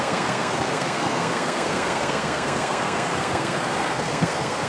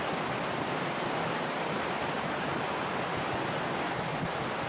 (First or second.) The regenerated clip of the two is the first